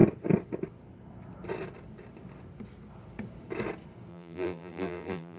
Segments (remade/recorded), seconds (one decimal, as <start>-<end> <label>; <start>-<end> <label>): 0.0-4.1 recorded; 4.1-5.4 remade